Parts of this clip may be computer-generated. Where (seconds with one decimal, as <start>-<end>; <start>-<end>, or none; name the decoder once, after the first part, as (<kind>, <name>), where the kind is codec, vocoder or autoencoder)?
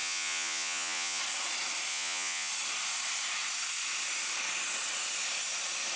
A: 0.0-1.2 (vocoder, Vocos); 1.9-2.5